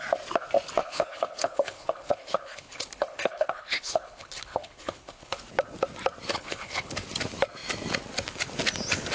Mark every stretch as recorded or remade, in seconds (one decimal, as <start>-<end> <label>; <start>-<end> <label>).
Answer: 0.0-0.8 recorded; 0.8-5.4 remade; 5.4-6.3 recorded; 6.3-6.9 remade; 6.9-9.1 recorded